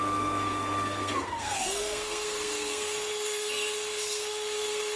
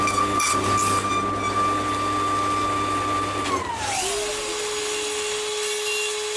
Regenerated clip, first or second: first